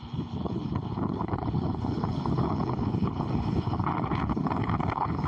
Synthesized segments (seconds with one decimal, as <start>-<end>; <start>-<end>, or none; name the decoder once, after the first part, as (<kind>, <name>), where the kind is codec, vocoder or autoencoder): 0.0-5.3 (codec, HILCodec)